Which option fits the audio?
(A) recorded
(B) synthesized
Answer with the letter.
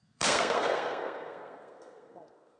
B